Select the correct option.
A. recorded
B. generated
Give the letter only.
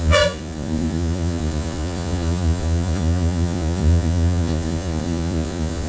B